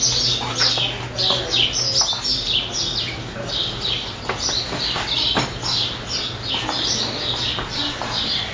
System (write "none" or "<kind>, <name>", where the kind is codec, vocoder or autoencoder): none